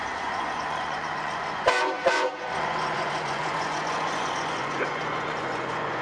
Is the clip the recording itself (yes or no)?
no